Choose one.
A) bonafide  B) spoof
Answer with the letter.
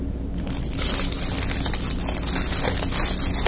A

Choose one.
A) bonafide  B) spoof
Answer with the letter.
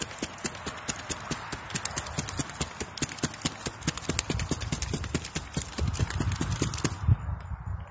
A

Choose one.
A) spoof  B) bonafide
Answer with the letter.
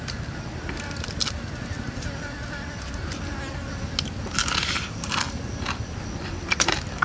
B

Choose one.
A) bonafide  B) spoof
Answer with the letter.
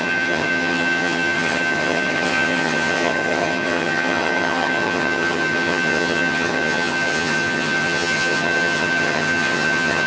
B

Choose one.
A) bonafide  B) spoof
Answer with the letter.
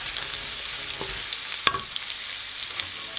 A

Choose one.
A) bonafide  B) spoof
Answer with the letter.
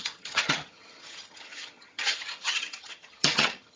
B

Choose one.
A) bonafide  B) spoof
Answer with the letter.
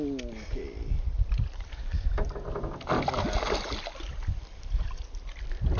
A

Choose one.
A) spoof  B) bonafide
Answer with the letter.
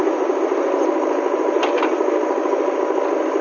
B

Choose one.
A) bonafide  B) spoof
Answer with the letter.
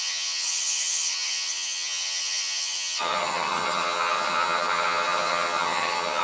B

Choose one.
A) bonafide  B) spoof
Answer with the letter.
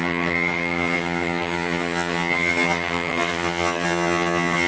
B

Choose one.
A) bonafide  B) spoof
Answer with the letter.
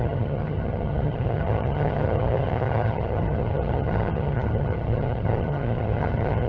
B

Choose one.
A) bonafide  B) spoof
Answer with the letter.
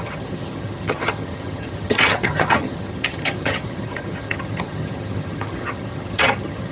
B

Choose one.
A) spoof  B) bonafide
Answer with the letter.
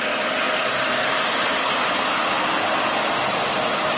B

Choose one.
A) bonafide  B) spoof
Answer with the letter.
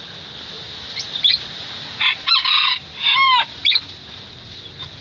A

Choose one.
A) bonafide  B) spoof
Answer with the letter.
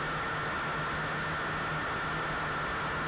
A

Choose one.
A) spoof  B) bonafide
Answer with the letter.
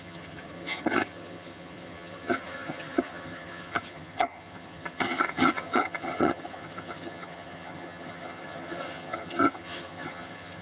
A